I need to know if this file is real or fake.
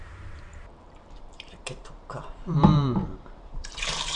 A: fake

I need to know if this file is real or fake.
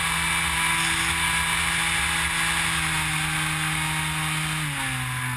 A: real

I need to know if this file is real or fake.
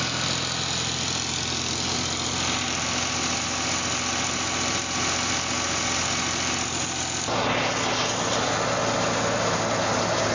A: real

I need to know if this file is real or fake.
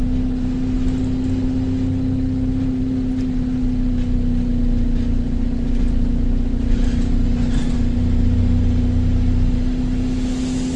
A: real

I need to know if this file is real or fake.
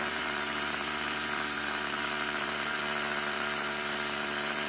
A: fake